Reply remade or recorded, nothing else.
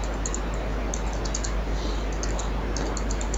recorded